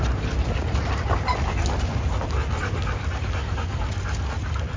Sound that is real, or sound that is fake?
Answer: real